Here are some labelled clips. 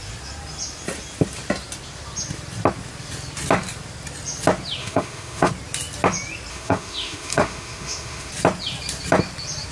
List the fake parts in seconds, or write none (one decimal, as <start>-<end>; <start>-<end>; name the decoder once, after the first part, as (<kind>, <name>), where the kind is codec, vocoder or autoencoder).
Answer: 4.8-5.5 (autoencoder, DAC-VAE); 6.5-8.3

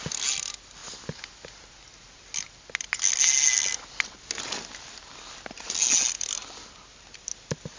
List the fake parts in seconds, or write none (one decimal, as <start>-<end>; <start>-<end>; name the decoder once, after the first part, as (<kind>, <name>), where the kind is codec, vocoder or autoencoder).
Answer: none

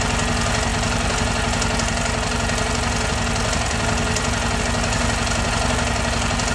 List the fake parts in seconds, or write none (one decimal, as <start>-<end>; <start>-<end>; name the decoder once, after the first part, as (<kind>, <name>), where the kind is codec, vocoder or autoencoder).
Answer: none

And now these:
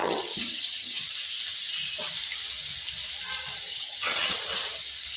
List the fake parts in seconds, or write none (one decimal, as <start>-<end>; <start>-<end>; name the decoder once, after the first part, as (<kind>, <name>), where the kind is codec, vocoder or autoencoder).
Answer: 0.0-1.0 (vocoder, HiFi-GAN); 3.7-4.4

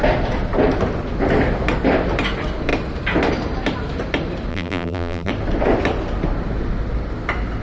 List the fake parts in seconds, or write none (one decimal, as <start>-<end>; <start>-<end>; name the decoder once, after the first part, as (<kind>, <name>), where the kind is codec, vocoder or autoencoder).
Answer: 4.5-5.3 (vocoder, BigVGAN v2)

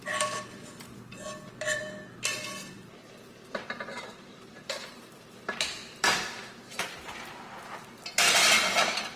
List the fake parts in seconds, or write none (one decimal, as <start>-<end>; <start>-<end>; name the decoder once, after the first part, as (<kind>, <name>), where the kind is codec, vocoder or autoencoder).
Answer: 3.3-8.0 (vocoder, BigVGAN v2)

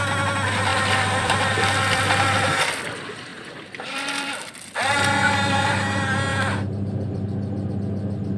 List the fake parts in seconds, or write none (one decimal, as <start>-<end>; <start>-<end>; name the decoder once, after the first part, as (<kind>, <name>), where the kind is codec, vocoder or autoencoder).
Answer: 0.7-2.0 (vocoder, BigVGAN v2); 3.3-5.7; 6.3-7.7

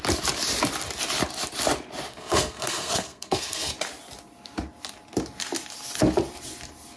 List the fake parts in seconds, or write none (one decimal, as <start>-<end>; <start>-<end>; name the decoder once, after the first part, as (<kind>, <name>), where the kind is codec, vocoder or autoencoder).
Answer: 2.1-3.7 (codec, SNAC)